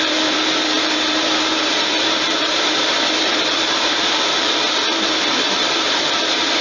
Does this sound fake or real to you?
fake